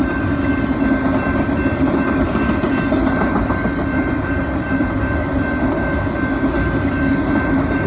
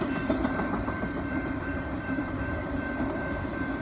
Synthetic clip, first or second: second